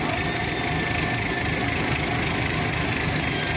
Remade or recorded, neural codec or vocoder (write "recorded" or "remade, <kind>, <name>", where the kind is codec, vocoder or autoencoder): recorded